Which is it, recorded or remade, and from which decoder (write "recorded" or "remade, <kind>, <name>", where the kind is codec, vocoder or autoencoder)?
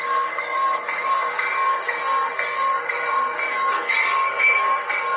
remade, codec, SNAC